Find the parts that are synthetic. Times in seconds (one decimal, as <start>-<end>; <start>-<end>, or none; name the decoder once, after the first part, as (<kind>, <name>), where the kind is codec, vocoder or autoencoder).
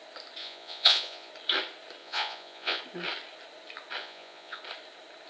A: 0.4-1.3 (vocoder, Vocos); 2.0-2.8; 4.0-4.6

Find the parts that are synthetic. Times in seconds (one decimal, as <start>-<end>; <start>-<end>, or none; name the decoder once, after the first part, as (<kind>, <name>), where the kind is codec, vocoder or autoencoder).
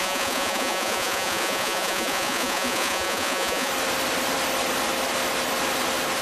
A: 0.0-3.7 (vocoder, Vocos)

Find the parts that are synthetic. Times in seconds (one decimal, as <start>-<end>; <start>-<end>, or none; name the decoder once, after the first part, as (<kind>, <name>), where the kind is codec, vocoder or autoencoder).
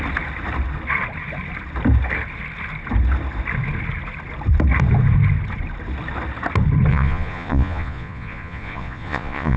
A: 6.9-9.6 (vocoder, Vocos)